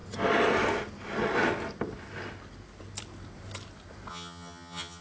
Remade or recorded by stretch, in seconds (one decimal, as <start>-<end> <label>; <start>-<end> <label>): 0.0-4.1 recorded; 4.1-5.0 remade